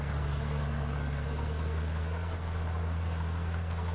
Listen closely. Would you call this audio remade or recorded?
remade